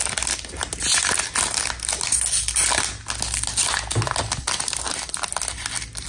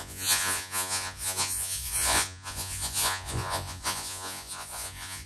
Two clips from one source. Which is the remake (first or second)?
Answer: second